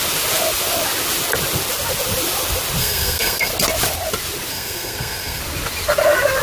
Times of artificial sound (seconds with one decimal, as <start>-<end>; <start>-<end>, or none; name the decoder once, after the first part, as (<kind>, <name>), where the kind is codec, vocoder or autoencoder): 2.8-3.5 (codec, SNAC); 4.5-5.4